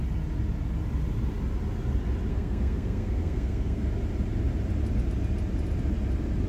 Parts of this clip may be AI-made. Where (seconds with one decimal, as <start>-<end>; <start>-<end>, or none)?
2.3-3.9